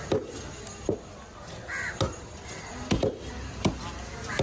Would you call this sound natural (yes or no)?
yes